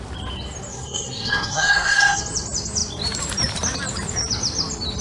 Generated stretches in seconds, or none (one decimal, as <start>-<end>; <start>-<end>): 0.7-2.2